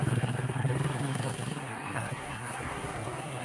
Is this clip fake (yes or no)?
yes